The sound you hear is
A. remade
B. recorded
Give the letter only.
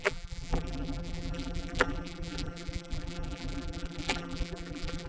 A